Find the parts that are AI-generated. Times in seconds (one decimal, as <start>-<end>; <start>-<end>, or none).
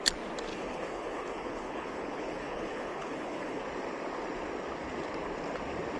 0.5-3.6